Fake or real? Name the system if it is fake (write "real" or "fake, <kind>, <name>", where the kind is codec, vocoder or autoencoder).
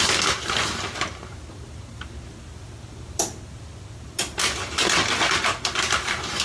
real